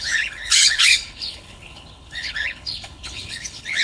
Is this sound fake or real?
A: fake